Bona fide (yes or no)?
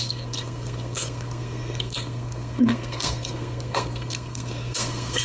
no